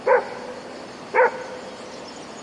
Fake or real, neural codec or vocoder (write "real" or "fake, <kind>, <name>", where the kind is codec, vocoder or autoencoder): real